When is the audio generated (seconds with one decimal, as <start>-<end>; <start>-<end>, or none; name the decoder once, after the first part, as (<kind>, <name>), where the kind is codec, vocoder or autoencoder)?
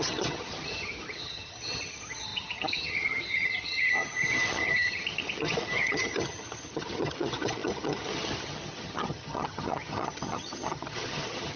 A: 0.0-11.6 (vocoder, HiFi-GAN)